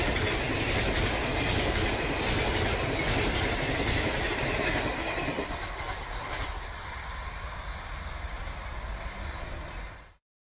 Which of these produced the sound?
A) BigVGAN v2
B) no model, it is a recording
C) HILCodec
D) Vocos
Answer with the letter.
B